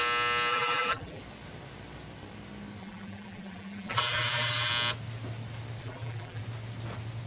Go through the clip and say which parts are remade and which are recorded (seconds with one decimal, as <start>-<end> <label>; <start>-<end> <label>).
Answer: 0.0-0.5 recorded; 0.5-1.2 remade; 1.2-2.8 recorded; 2.8-4.7 remade; 4.7-5.8 recorded; 5.8-6.4 remade; 6.4-7.3 recorded